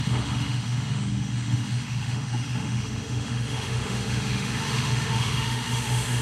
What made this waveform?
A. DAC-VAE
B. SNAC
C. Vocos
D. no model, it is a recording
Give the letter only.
A